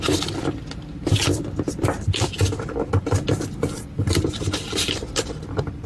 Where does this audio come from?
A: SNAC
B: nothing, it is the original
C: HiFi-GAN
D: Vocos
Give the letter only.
B